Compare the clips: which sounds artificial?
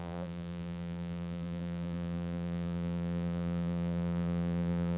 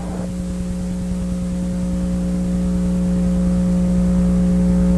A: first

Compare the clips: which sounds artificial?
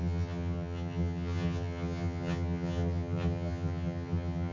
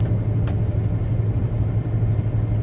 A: first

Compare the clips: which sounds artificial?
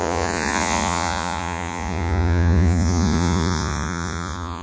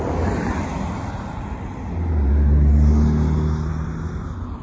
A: first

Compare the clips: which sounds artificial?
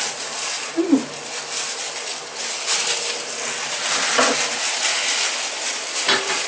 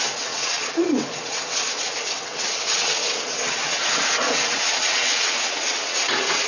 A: second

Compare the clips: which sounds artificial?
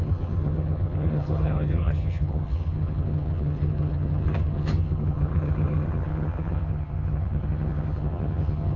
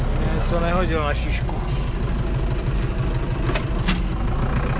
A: first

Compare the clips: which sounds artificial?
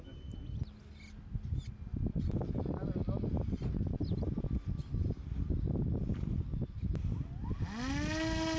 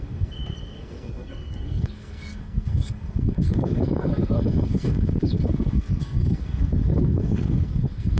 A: second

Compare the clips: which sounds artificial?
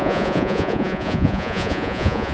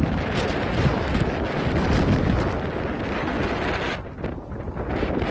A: first